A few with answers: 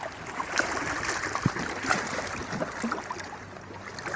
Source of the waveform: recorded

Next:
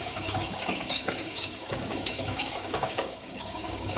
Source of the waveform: remade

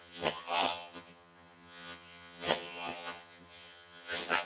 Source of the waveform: remade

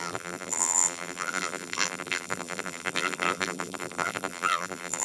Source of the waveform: remade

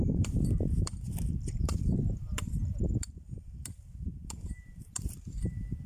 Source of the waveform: remade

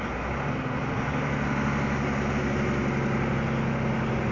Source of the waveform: recorded